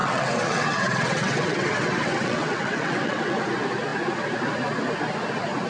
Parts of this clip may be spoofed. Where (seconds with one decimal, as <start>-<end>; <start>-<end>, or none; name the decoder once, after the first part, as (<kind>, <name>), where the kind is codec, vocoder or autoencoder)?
0.0-3.4 (vocoder, WaveNeXt)